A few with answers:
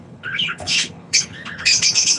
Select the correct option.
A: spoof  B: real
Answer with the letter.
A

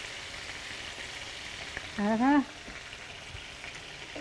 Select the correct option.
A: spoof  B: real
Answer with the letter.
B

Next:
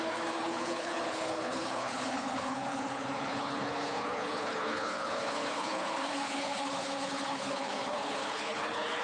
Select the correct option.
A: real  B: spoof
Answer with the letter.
B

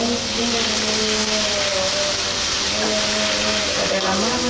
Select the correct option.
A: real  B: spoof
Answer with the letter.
A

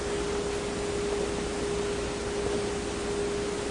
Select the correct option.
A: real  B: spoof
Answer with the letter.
A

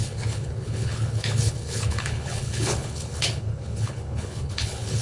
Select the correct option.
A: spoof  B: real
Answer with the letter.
A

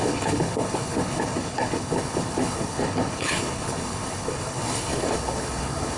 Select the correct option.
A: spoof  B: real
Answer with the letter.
A